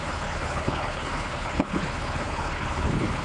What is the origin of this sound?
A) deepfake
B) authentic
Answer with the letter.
A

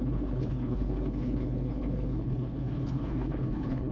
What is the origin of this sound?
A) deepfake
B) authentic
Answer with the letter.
A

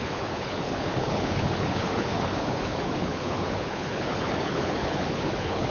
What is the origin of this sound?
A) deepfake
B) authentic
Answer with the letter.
A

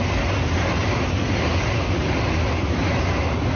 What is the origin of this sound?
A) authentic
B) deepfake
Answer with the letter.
A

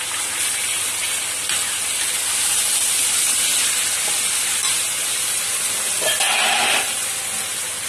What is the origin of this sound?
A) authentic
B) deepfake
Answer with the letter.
A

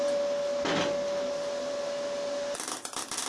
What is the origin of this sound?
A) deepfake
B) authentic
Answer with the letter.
B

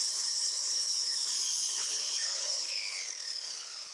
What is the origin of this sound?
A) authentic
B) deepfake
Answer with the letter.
B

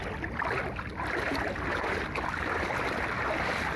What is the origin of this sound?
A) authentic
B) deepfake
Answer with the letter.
A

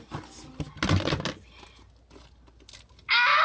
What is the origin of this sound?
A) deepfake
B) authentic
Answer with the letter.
B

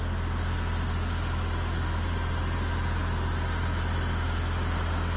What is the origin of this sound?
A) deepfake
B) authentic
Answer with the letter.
B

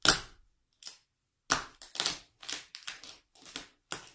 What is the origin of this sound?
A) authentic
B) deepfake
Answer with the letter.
A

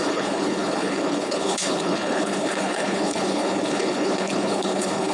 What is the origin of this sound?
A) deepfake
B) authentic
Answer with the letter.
A